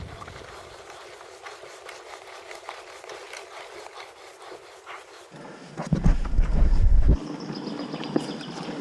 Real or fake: real